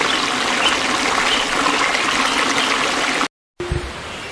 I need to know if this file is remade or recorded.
recorded